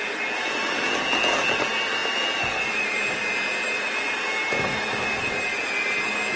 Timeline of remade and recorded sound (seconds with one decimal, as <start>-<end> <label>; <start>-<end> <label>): 0.0-6.4 recorded